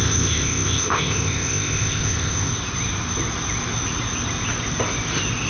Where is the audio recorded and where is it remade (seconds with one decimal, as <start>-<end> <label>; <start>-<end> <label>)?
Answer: 0.0-2.5 remade; 2.5-5.5 recorded

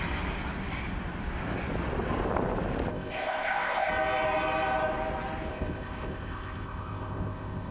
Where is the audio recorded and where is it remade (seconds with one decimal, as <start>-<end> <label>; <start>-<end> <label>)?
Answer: 0.0-2.9 recorded; 2.9-3.9 remade; 3.9-5.5 recorded; 5.5-7.7 remade

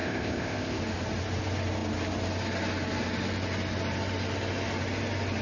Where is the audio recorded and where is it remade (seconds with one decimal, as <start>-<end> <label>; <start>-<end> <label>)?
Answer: 0.0-0.8 remade; 0.8-5.4 recorded

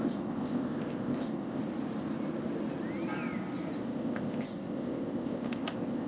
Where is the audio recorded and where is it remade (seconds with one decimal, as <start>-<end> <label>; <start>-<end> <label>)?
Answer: 0.0-1.6 remade; 1.6-3.8 recorded; 3.8-6.1 remade

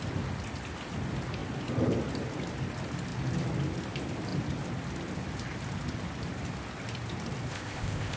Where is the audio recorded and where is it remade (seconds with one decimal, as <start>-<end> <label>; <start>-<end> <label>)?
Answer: 0.0-7.5 recorded; 7.5-8.2 remade

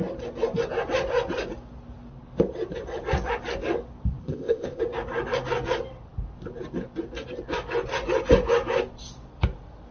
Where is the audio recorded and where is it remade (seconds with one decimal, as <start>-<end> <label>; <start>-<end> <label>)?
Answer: 0.0-4.2 recorded; 4.2-4.8 remade; 4.8-9.9 recorded

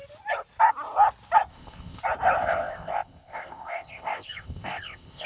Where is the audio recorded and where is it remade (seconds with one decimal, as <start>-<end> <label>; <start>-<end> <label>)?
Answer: 0.0-1.5 recorded; 1.5-2.0 remade; 2.0-2.4 recorded; 2.4-5.3 remade